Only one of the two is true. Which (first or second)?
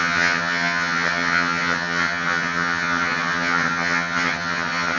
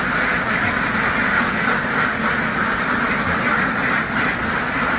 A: second